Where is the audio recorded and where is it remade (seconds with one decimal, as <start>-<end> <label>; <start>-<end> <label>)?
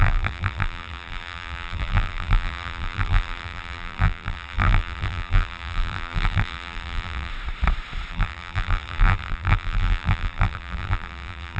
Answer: 0.0-7.3 remade; 7.3-8.1 recorded; 8.1-11.6 remade